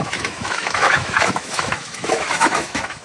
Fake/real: fake